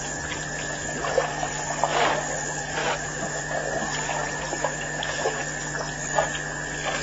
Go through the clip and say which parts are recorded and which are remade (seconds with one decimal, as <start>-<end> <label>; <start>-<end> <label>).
0.0-2.8 recorded; 2.8-3.4 remade; 3.4-4.6 recorded; 4.6-5.4 remade; 5.4-7.0 recorded